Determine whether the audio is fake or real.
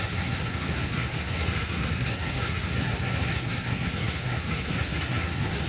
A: fake